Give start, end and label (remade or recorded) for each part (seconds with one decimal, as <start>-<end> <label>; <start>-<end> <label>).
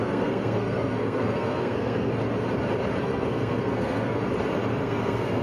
0.0-2.1 remade; 2.1-3.0 recorded; 3.0-4.2 remade; 4.2-4.8 recorded; 4.8-5.4 remade